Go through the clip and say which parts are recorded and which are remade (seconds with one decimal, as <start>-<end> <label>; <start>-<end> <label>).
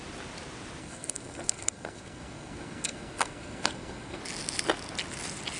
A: 0.0-0.8 recorded; 0.8-4.2 remade; 4.2-5.6 recorded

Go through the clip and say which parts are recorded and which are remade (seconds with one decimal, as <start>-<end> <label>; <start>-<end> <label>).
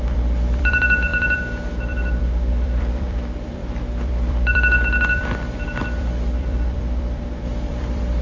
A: 0.0-8.2 remade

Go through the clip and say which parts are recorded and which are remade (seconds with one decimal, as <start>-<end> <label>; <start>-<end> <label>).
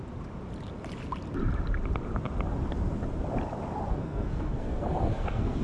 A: 0.0-3.9 recorded; 3.9-5.6 remade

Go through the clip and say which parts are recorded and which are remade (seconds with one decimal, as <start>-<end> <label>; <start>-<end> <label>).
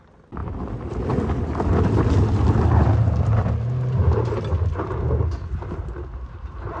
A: 0.0-6.8 recorded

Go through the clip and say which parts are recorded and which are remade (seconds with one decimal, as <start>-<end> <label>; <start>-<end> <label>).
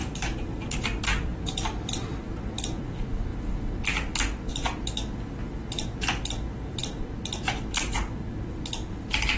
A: 0.0-2.8 remade; 2.8-9.4 recorded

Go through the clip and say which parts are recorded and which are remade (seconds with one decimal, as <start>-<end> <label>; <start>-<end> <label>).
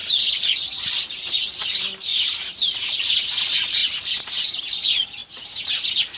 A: 0.0-6.2 recorded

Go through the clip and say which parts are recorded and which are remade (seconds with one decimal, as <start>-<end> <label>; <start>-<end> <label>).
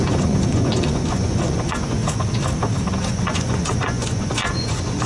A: 0.0-2.0 remade; 2.0-3.0 recorded; 3.0-5.1 remade